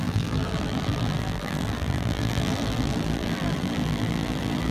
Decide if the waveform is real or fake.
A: fake